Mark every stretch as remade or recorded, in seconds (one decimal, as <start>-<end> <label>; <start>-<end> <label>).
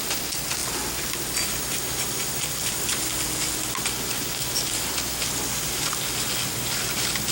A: 0.0-7.3 recorded